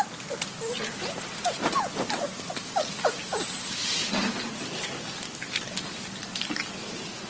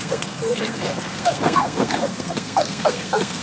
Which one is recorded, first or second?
first